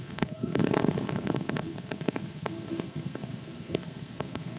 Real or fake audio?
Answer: fake